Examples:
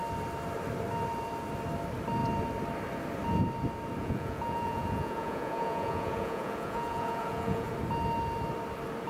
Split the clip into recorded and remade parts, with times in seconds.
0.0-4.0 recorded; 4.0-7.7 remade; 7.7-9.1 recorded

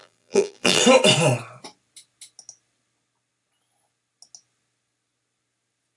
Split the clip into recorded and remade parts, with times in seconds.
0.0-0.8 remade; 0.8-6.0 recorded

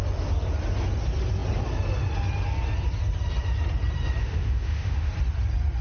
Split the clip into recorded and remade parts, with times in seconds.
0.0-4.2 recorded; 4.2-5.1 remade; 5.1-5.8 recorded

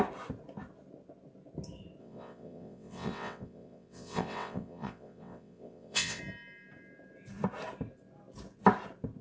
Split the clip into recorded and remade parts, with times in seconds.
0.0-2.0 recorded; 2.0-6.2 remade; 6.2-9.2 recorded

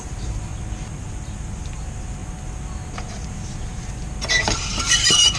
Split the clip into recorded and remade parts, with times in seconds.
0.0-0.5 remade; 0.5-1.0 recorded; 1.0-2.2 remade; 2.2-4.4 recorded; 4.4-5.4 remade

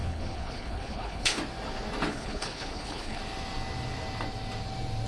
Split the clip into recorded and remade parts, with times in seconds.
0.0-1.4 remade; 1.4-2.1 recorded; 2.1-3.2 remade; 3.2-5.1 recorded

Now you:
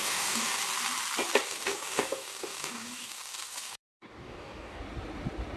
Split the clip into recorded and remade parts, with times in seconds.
0.0-0.6 remade; 0.6-1.4 recorded; 1.4-4.8 remade; 4.8-5.6 recorded

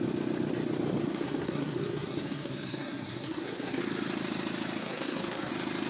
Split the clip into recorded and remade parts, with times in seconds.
0.0-1.0 recorded; 1.0-3.8 remade; 3.8-4.8 recorded; 4.8-5.5 remade; 5.5-5.9 recorded